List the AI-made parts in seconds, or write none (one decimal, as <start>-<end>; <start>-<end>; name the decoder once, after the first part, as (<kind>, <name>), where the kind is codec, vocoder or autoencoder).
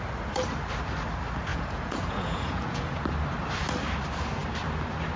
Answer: 1.5-3.0 (vocoder, Vocos)